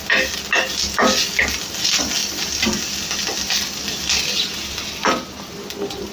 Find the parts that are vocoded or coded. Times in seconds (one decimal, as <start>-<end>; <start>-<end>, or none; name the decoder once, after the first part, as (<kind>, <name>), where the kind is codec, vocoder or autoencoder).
2.2-5.6 (vocoder, BigVGAN v2)

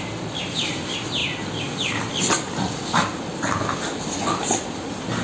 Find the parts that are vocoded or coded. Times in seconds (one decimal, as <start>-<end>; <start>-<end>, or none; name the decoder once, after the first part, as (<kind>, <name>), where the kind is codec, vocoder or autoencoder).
none

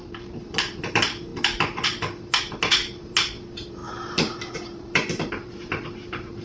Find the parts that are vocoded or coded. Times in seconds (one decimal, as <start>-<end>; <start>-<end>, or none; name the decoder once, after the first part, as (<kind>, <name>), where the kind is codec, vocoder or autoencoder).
0.0-1.3 (vocoder, BigVGAN v2); 2.6-6.4

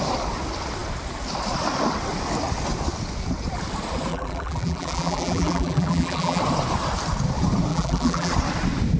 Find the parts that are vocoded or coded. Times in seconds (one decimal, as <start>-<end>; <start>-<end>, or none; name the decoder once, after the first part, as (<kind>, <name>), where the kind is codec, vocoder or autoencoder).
4.1-6.4 (vocoder, BigVGAN v2); 7.7-8.3

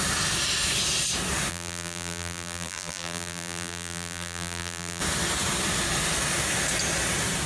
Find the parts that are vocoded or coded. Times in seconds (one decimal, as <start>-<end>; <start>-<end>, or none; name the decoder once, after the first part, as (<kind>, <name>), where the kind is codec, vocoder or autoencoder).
1.5-5.0 (vocoder, BigVGAN v2)

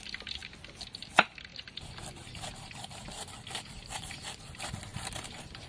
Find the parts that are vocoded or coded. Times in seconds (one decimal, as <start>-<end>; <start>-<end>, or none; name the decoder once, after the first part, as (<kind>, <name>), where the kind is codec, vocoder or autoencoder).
4.9-5.7 (vocoder, BigVGAN v2)

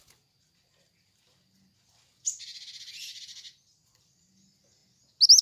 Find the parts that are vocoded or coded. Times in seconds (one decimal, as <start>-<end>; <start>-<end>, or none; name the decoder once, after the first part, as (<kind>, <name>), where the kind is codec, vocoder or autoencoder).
none